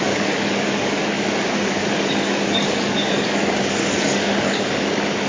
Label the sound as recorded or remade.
remade